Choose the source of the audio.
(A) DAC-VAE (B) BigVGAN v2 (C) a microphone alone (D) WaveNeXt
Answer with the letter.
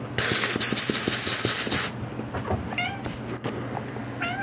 C